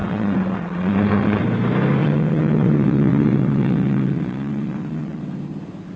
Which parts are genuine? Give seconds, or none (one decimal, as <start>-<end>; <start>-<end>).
1.4-2.0; 5.2-6.0